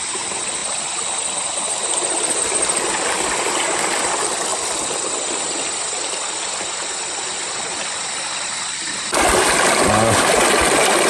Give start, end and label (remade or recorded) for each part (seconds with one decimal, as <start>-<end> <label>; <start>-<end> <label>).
0.0-0.6 recorded; 0.6-2.4 remade; 2.4-4.5 recorded; 4.5-5.1 remade; 5.1-11.1 recorded